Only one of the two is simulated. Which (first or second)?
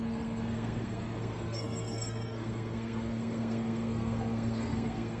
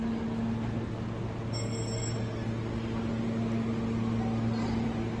first